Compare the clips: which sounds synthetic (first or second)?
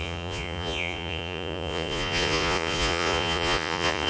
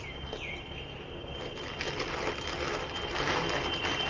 first